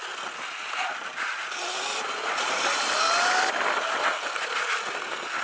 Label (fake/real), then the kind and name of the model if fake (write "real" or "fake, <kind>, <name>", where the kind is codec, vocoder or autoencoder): real